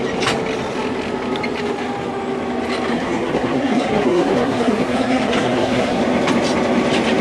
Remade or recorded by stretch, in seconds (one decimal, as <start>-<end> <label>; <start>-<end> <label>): 0.0-2.9 recorded; 2.9-6.0 remade; 6.0-7.2 recorded